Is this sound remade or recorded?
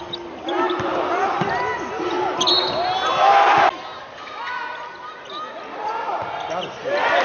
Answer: recorded